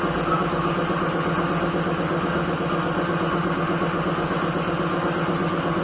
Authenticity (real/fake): real